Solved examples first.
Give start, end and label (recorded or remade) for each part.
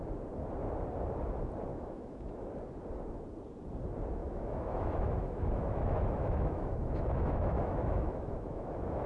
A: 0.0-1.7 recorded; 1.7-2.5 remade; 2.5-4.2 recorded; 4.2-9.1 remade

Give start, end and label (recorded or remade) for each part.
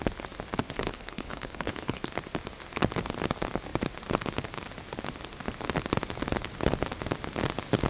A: 0.0-0.6 recorded; 0.6-2.0 remade; 2.0-7.9 recorded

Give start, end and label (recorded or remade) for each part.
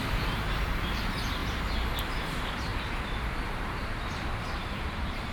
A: 0.0-1.4 remade; 1.4-2.0 recorded; 2.0-2.7 remade; 2.7-3.6 recorded; 3.6-5.3 remade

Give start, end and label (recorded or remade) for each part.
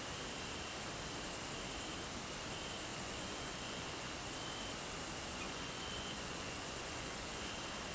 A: 0.0-2.9 recorded; 2.9-4.1 remade; 4.1-5.3 recorded; 5.3-7.5 remade; 7.5-7.9 recorded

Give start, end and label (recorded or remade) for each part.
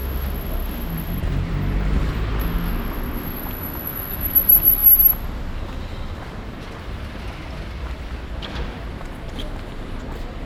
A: 0.0-1.2 remade; 1.2-2.4 recorded; 2.4-3.4 remade; 3.4-10.5 recorded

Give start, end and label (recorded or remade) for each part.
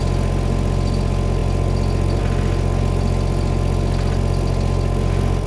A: 0.0-5.5 recorded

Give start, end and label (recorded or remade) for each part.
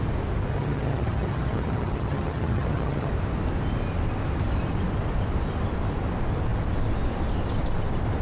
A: 0.0-0.5 recorded; 0.5-3.1 remade; 3.1-8.2 recorded